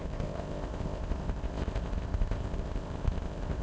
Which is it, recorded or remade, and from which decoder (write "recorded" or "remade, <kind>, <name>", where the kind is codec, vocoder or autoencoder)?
remade, codec, ZipCodec